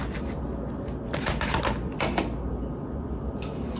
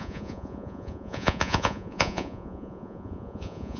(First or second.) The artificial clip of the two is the second